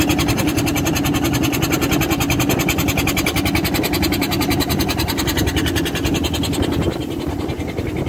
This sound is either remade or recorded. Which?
recorded